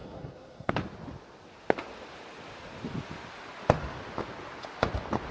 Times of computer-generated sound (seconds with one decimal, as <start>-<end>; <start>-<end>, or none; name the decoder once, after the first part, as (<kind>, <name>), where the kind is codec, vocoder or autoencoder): 0.0-0.7 (codec, SNAC)